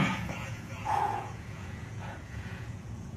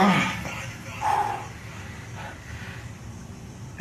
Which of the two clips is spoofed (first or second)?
first